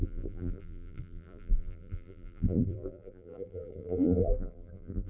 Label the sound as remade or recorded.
remade